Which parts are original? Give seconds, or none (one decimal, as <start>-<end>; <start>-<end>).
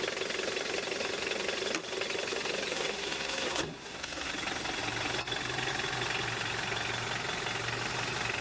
0.0-2.7; 4.3-8.4